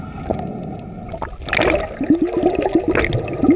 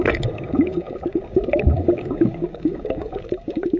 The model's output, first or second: second